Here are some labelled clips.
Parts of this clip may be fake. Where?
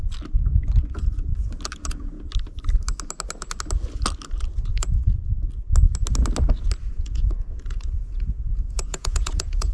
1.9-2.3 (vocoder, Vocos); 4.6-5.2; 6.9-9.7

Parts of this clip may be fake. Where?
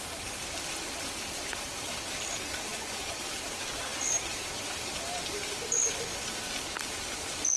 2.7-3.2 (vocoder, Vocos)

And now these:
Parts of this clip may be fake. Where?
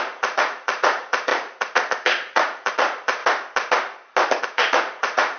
0.0-3.2 (vocoder, Vocos); 4.4-5.4